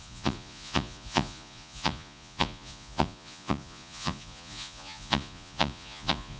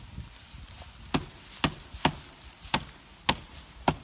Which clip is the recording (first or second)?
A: second